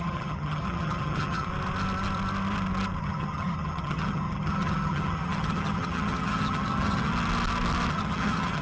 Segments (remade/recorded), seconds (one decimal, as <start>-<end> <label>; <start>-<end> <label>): 0.0-1.5 remade; 1.5-3.0 recorded; 3.0-7.1 remade; 7.1-7.9 recorded; 7.9-8.6 remade